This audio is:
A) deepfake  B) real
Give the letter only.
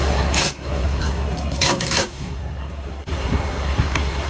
A